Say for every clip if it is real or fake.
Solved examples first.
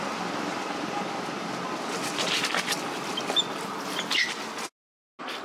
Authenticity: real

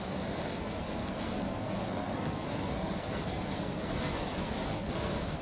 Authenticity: fake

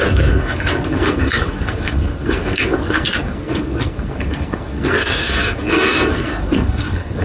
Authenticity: fake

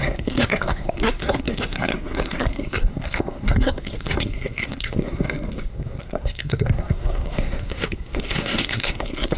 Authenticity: fake